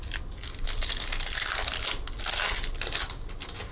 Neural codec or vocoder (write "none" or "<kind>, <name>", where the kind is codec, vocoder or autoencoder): none